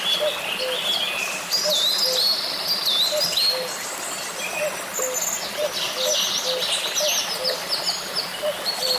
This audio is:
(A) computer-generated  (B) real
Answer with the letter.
B